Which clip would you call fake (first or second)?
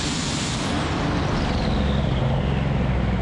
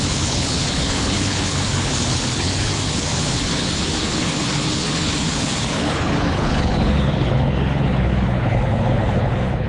second